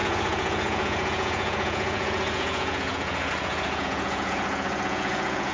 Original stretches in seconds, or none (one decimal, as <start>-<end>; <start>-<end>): none